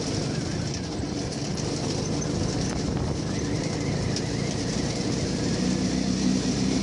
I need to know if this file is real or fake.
real